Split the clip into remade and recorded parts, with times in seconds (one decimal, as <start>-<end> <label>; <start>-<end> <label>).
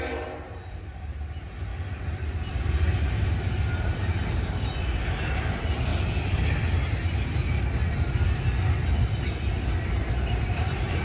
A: 0.0-1.7 remade; 1.7-3.0 recorded; 3.0-5.9 remade; 5.9-10.1 recorded; 10.1-11.0 remade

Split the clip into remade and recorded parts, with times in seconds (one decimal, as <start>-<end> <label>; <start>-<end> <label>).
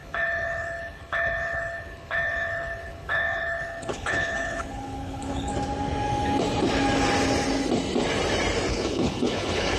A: 0.0-5.5 remade; 5.5-8.7 recorded; 8.7-9.8 remade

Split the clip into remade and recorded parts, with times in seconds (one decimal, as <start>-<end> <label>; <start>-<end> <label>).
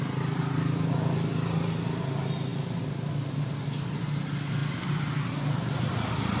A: 0.0-6.4 recorded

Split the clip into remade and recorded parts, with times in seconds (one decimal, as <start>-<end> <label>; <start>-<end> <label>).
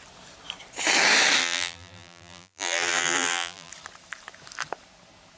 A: 0.0-1.4 recorded; 1.4-3.7 remade; 3.7-5.4 recorded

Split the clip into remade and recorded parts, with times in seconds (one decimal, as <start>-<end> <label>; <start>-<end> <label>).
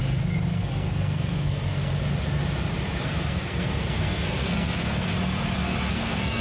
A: 0.0-0.5 recorded; 0.5-1.9 remade; 1.9-3.0 recorded; 3.0-5.1 remade; 5.1-5.9 recorded; 5.9-6.4 remade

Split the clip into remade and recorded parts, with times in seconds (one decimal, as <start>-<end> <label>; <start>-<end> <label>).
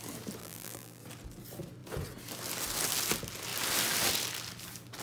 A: 0.0-0.4 recorded; 0.4-1.0 remade; 1.0-5.0 recorded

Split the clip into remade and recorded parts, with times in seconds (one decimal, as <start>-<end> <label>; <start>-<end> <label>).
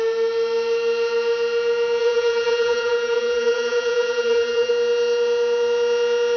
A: 0.0-2.0 recorded; 2.0-4.7 remade; 4.7-6.4 recorded